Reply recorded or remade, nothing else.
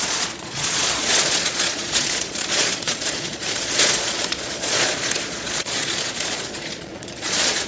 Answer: remade